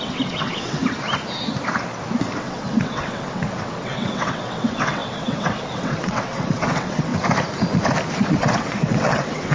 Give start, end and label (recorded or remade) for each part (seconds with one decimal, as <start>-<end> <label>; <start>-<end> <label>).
0.0-0.8 remade; 0.8-2.4 recorded; 2.4-7.1 remade; 7.1-8.1 recorded; 8.1-9.5 remade